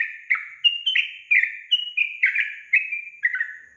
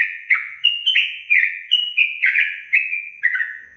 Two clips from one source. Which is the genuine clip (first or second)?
first